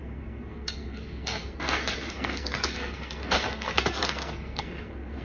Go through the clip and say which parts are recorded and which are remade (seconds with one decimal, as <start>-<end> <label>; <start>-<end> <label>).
0.0-5.2 remade